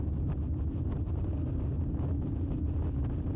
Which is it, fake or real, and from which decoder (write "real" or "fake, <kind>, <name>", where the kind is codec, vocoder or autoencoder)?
real